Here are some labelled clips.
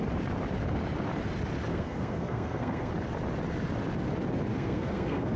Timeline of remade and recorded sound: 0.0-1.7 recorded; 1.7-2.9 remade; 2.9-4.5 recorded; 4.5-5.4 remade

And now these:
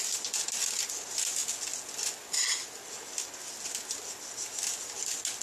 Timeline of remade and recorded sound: 0.0-5.4 recorded